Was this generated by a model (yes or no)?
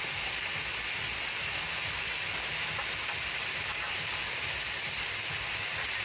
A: no